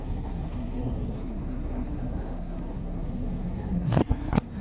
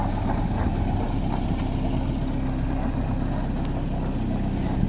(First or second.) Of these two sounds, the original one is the second